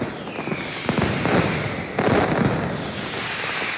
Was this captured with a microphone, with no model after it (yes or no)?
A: yes